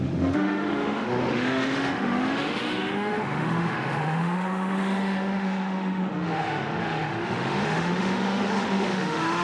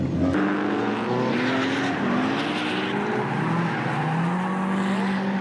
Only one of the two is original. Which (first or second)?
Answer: second